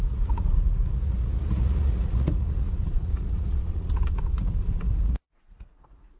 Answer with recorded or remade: remade